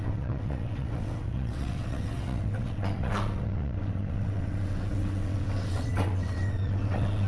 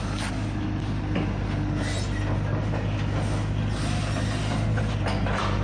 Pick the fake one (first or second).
first